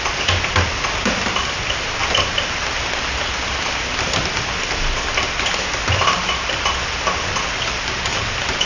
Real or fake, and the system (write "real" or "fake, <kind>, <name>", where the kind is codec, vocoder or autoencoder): real